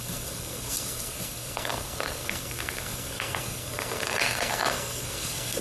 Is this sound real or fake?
fake